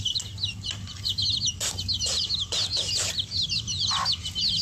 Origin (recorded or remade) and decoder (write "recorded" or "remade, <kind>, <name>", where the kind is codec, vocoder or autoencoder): recorded